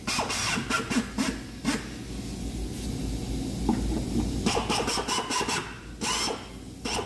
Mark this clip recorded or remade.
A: recorded